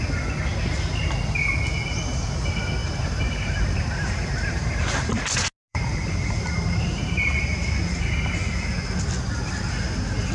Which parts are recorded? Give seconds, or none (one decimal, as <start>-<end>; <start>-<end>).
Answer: 0.0-2.8; 5.2-5.7; 8.0-10.3